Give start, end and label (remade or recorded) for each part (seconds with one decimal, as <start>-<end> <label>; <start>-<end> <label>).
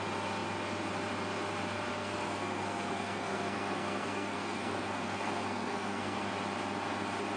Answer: 0.0-1.9 recorded; 1.9-6.3 remade; 6.3-7.4 recorded